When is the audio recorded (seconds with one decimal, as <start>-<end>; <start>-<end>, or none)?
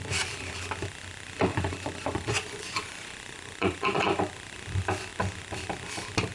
0.0-1.5; 4.2-6.3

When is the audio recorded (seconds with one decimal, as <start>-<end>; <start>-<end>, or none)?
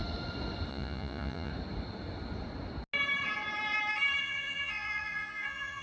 0.0-0.7; 1.5-4.2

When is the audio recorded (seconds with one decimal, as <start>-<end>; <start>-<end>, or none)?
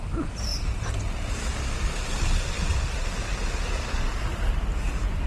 0.5-1.3; 2.7-3.9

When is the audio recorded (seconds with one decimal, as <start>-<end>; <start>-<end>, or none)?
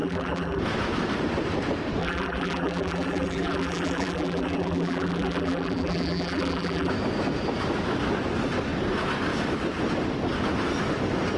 0.6-2.0; 6.9-11.4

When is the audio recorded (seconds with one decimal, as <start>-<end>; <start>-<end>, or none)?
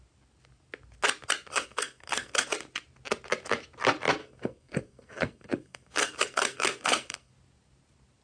0.0-1.5; 2.5-4.2; 7.3-8.2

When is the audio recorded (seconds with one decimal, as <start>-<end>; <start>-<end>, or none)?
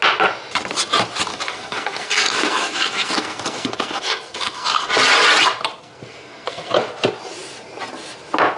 0.0-1.3; 4.9-5.8; 6.8-8.6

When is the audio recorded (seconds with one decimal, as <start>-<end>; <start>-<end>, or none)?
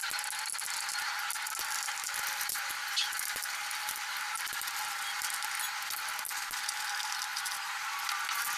0.0-2.0; 4.5-8.6